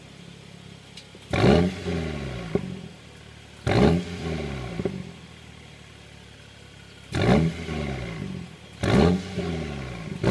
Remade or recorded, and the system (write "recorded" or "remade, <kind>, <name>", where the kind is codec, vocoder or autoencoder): recorded